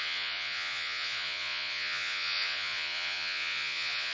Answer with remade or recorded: remade